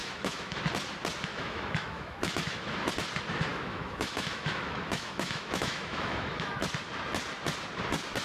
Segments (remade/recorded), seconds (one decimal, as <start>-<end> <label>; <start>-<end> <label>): 0.0-0.6 remade; 0.6-1.3 recorded; 1.3-2.9 remade; 2.9-3.5 recorded; 3.5-6.5 remade; 6.5-8.2 recorded